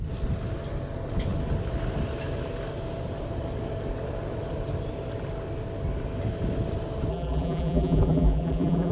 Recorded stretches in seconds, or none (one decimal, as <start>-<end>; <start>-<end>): 0.0-7.1